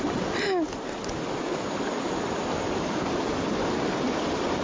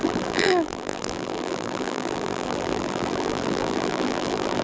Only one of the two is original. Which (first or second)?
first